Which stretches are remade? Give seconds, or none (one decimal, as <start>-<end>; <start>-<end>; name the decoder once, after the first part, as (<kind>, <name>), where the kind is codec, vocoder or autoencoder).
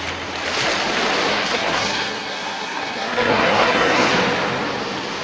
1.3-4.1 (codec, SNAC)